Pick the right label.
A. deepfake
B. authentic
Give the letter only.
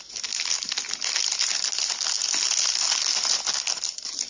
B